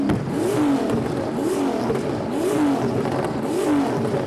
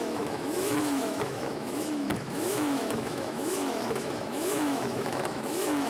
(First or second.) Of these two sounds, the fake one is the second